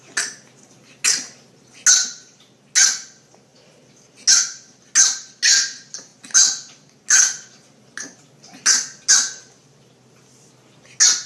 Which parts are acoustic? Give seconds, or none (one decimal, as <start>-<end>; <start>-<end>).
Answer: 0.0-11.3